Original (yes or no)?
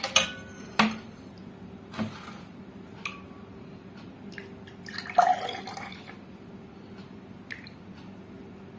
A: yes